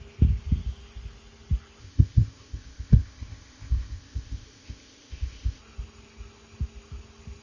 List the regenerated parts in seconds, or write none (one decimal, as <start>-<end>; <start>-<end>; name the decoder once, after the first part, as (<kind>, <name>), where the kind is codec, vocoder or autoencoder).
1.8-5.6 (codec, ZipCodec)